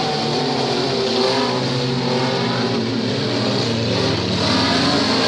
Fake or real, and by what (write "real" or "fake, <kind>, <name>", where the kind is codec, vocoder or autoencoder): real